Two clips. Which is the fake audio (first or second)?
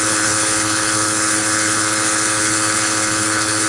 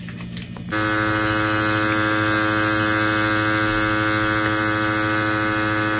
first